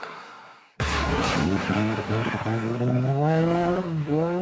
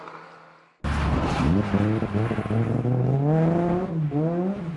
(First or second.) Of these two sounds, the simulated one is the first